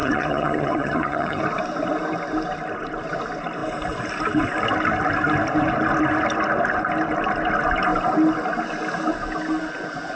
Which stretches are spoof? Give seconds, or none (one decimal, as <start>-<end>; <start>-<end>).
0.0-1.4